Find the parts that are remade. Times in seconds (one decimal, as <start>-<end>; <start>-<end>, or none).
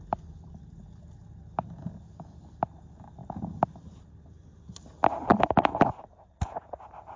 3.2-3.9; 5.3-6.3